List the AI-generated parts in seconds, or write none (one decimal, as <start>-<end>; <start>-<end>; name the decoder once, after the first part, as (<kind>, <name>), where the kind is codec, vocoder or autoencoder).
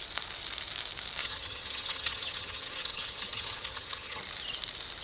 1.2-4.2 (vocoder, HiFi-GAN)